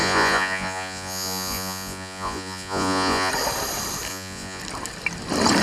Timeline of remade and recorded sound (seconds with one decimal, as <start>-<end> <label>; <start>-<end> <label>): 0.0-3.3 remade; 3.3-4.1 recorded; 4.1-4.6 remade; 4.6-5.6 recorded